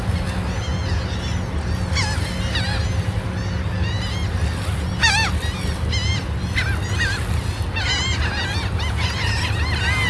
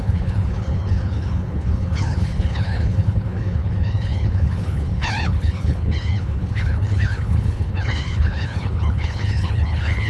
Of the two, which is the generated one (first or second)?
second